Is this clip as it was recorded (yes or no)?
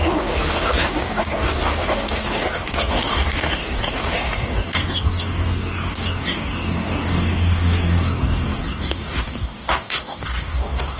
no